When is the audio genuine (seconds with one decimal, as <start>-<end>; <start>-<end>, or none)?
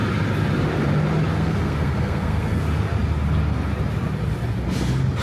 0.0-1.3; 2.6-5.2